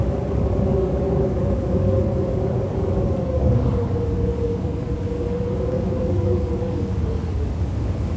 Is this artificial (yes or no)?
yes